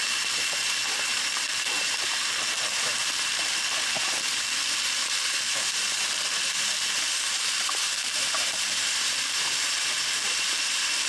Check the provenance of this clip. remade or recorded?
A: remade